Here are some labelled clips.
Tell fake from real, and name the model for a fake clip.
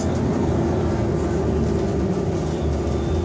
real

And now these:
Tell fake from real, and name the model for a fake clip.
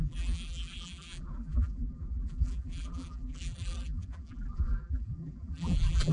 fake, vocoder, BigVGAN v2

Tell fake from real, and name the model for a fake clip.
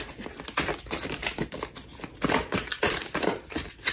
real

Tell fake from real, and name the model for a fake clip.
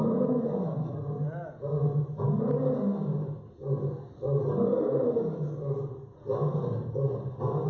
real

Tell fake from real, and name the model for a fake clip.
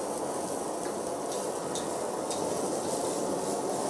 real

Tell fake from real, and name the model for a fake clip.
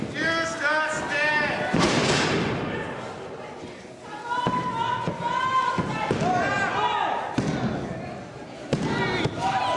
real